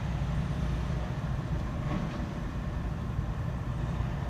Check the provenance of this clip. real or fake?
fake